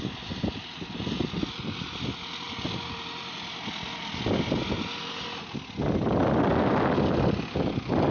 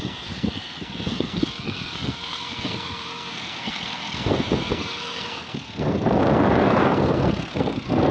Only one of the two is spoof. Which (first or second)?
second